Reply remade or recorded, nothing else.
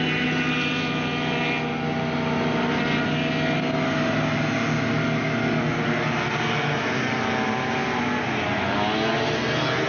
recorded